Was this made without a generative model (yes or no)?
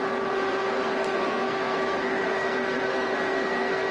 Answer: no